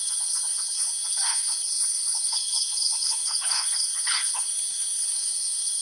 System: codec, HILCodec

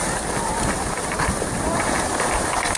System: vocoder, BigVGAN v2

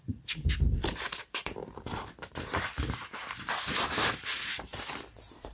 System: vocoder, BigVGAN v2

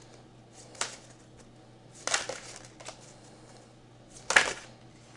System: none